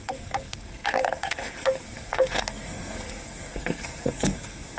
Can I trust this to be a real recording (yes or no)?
no